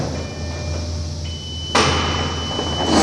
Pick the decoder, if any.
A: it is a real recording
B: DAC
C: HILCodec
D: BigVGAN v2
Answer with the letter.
A